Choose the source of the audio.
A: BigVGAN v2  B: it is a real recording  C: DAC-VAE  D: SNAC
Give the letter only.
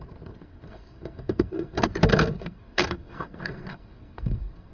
D